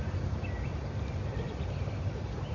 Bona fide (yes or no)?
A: yes